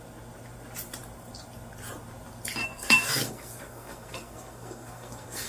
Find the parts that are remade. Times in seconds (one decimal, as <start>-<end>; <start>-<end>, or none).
2.6-5.5